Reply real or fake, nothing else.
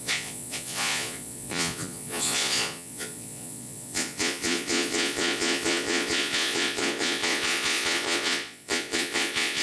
fake